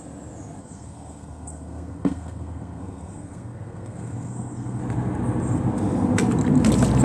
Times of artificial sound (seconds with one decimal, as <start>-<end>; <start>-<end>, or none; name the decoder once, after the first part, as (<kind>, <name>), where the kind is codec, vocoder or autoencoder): 0.6-4.8 (codec, SNAC)